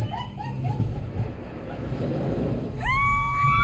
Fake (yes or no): yes